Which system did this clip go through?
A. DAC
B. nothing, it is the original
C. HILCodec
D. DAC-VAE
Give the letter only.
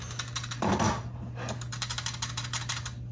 B